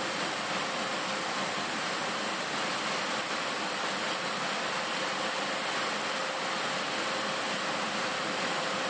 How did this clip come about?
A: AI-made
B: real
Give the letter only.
B